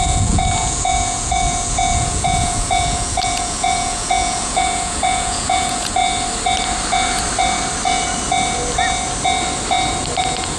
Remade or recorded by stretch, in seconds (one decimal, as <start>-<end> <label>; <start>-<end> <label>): 0.0-6.0 remade; 6.0-10.2 recorded; 10.2-10.6 remade